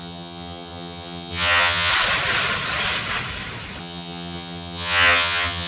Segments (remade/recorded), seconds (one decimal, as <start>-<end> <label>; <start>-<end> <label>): 0.0-1.9 remade; 1.9-3.8 recorded; 3.8-5.7 remade